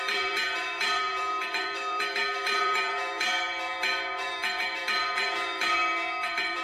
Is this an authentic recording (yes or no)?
no